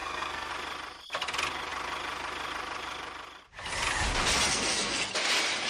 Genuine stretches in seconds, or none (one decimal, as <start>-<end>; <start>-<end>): 0.5-4.5; 5.1-5.7